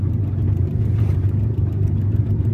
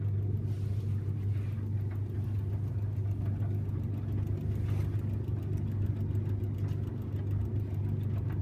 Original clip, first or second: second